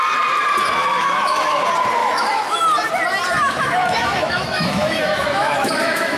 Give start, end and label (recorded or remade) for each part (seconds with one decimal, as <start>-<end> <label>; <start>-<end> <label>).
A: 0.0-0.8 recorded; 0.8-1.6 remade; 1.6-2.0 recorded; 2.0-2.6 remade; 2.6-3.3 recorded; 3.3-6.2 remade